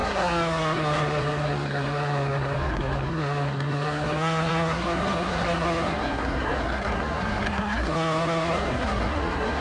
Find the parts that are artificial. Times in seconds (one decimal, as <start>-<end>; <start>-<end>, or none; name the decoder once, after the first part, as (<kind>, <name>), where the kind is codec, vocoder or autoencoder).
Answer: 0.0-9.6 (codec, SNAC)